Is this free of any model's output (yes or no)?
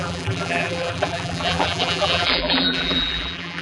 no